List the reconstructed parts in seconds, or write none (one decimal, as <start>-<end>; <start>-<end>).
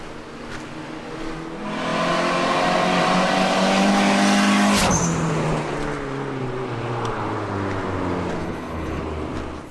8.4-9.0